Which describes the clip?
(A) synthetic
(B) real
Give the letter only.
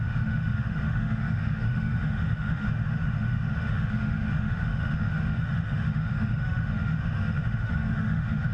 A